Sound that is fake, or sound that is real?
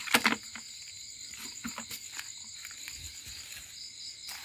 real